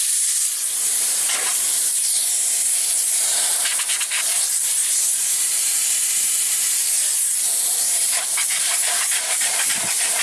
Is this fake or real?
fake